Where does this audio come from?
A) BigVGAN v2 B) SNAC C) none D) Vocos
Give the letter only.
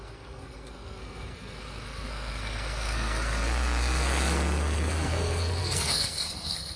B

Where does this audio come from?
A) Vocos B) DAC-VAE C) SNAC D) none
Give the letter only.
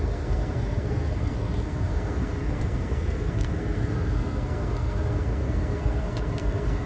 C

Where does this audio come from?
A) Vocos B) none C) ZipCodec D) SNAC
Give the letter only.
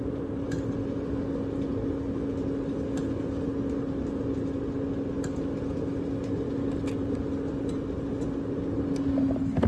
B